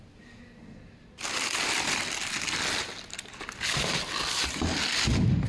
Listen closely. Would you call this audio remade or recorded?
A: recorded